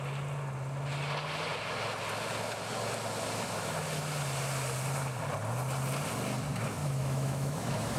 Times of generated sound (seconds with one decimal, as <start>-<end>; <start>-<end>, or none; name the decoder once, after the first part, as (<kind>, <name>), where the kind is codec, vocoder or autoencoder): 6.8-8.0 (autoencoder, DAC-VAE)